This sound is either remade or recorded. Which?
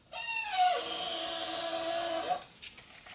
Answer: recorded